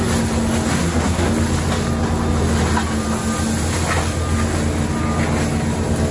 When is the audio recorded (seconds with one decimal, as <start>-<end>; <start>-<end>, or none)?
0.0-0.7; 1.3-6.1